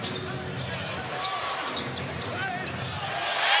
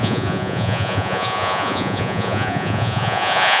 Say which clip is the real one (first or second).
first